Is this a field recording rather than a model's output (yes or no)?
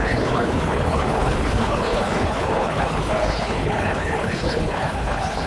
no